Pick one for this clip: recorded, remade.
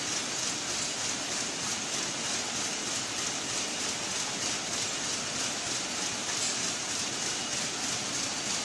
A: recorded